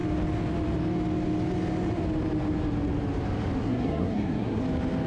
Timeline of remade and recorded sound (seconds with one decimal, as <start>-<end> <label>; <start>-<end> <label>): 0.0-3.6 recorded; 3.6-4.6 remade; 4.6-5.1 recorded